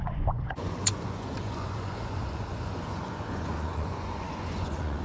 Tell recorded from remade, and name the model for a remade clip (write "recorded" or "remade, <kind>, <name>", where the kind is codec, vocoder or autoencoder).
remade, vocoder, Vocos